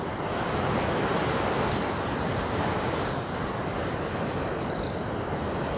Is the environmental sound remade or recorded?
recorded